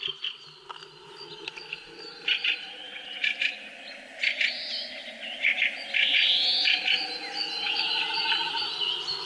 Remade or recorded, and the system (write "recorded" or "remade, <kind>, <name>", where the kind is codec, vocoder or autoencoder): recorded